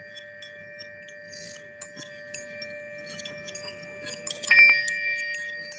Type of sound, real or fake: real